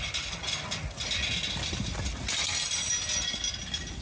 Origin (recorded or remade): recorded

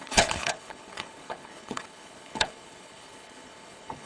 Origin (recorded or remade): remade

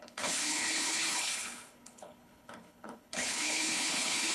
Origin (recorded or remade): remade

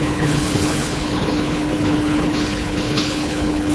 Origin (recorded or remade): remade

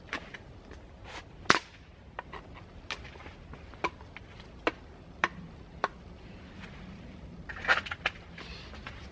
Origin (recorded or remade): recorded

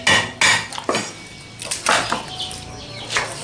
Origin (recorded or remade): recorded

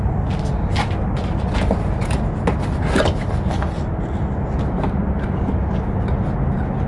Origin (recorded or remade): recorded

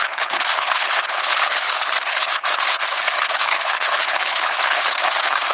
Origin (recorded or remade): remade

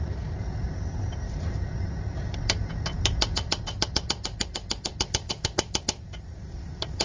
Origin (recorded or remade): recorded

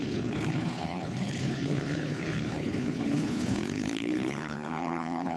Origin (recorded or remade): remade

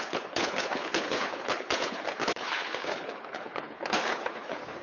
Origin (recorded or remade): remade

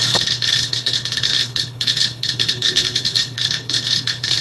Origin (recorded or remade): remade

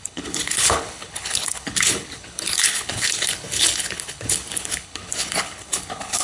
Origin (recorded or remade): remade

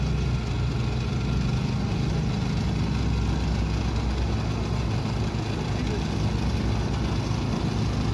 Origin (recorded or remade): recorded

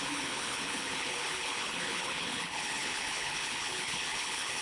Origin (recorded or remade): remade